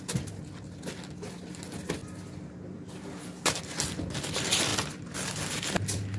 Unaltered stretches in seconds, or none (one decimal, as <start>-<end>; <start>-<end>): 0.0-6.2